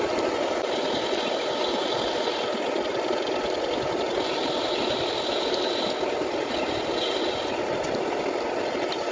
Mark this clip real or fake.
real